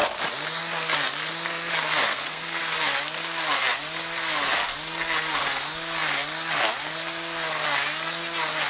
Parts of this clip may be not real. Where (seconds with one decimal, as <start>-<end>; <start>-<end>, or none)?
2.1-2.6